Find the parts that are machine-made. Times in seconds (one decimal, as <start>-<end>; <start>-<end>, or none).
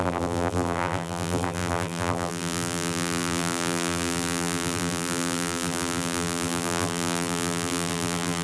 0.0-8.4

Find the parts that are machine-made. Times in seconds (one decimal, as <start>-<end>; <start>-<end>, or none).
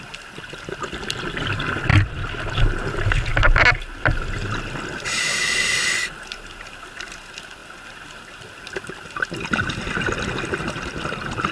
none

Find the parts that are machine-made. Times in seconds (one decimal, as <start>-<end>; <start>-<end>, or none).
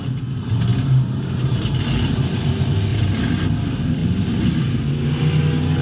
0.7-1.8; 2.9-3.5; 4.0-4.6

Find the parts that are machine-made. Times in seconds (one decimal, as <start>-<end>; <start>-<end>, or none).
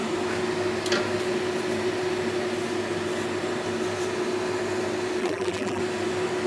5.2-5.8